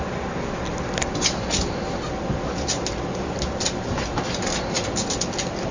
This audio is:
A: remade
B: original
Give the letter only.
B